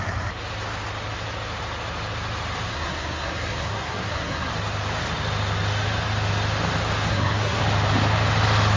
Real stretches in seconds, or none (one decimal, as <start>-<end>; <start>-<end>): 0.0-2.7; 4.5-7.1; 7.6-8.8